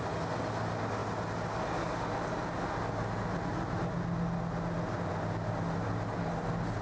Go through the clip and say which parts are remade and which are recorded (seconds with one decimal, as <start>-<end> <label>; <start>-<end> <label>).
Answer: 0.0-6.8 recorded